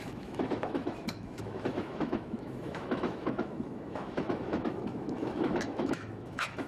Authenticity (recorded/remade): remade